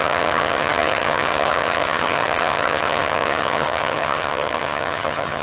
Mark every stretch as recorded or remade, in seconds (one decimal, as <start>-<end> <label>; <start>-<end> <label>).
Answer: 0.0-5.4 remade